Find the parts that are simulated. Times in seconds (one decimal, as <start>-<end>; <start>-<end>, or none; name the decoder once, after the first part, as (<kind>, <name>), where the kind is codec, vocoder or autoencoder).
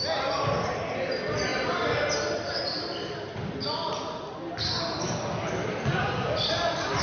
none